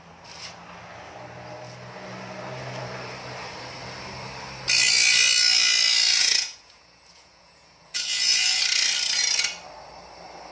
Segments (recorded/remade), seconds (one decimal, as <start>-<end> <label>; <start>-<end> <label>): 0.0-6.2 recorded; 6.2-8.6 remade; 8.6-10.5 recorded